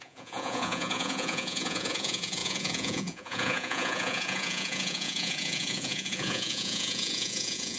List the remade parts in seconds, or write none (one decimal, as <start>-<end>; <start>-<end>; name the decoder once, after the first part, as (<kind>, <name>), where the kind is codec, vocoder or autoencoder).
0.0-7.8 (vocoder, Vocos)